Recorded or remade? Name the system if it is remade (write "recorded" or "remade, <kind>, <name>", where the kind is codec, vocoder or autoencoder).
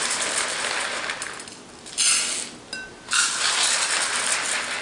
recorded